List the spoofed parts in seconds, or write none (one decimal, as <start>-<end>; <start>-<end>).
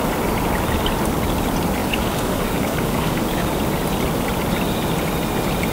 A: 1.8-3.6